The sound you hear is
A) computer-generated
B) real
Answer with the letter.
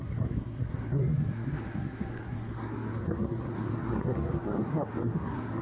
A